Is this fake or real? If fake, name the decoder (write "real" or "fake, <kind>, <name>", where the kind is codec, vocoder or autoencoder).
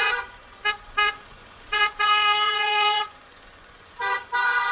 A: fake, vocoder, Vocos